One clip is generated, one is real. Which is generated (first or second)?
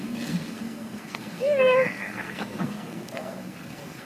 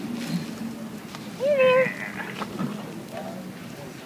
first